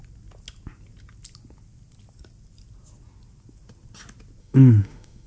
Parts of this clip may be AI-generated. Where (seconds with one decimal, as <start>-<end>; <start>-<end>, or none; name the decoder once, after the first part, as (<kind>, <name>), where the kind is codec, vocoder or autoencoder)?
4.4-5.3 (autoencoder, DAC-VAE)